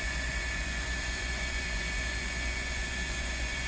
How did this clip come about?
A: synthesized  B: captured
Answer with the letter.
A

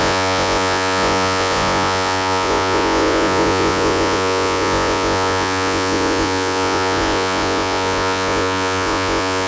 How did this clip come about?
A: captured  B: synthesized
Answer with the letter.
B